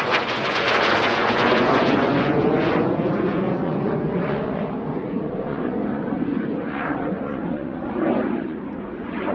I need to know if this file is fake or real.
fake